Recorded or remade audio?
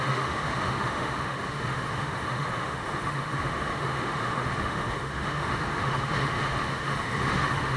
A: remade